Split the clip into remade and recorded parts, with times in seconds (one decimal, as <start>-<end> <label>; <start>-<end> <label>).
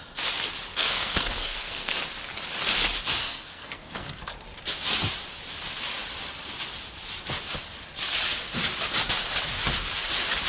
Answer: 0.0-0.7 recorded; 0.7-2.0 remade; 2.0-3.2 recorded; 3.2-4.2 remade; 4.2-10.5 recorded